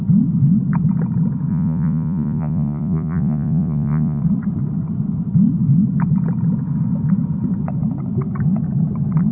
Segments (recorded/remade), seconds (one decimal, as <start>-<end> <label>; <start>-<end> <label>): 0.0-1.5 recorded; 1.5-4.2 remade; 4.2-9.3 recorded